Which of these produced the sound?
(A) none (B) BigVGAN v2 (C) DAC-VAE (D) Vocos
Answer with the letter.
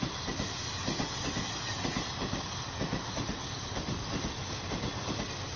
A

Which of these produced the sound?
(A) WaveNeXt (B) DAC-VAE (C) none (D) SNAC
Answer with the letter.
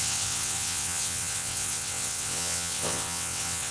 A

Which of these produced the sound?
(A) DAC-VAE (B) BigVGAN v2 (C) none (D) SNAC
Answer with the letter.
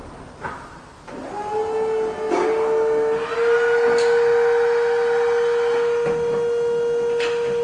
C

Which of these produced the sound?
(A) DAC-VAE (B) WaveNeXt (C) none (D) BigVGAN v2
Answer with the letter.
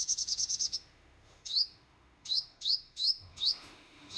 A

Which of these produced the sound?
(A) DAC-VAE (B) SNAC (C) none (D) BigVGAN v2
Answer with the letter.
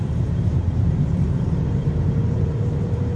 D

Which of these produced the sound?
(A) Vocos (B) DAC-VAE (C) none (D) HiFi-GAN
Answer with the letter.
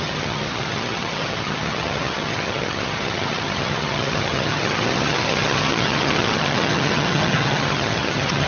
D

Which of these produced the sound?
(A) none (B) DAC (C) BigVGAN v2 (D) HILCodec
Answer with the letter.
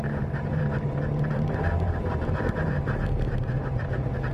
C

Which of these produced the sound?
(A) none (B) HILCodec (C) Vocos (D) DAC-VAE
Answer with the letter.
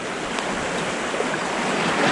A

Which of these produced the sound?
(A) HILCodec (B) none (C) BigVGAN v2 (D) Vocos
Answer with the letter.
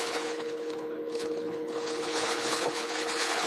A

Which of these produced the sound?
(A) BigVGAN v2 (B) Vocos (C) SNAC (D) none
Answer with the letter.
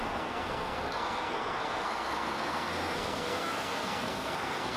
C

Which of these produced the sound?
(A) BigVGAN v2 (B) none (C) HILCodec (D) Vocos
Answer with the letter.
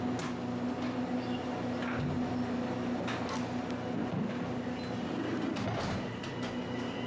B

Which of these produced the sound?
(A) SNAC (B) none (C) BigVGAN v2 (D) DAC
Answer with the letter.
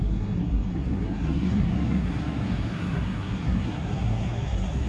A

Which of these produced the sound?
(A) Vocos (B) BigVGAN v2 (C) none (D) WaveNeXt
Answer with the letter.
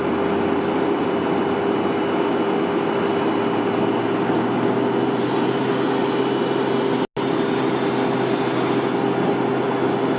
C